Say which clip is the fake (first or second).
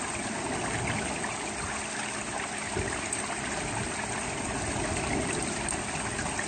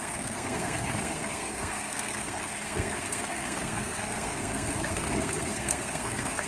second